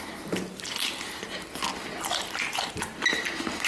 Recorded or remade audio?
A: recorded